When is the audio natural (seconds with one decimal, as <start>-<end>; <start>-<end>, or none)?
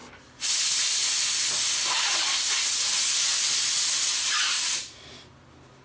0.0-5.8